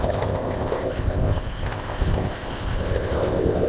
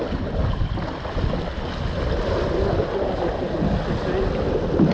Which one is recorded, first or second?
second